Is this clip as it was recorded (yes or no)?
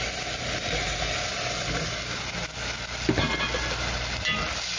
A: yes